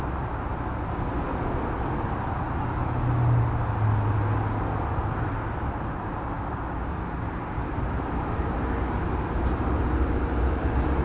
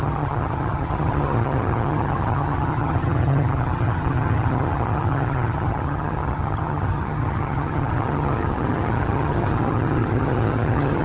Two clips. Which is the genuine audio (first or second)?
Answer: first